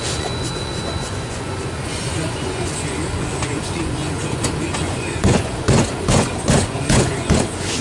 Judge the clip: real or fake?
fake